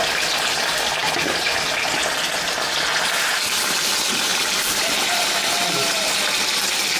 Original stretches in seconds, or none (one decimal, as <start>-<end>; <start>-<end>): 0.0-4.3; 6.2-7.0